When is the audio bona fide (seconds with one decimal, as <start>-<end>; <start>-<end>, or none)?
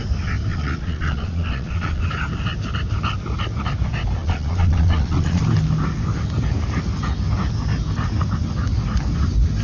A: 0.0-0.5; 2.0-4.2; 5.4-9.6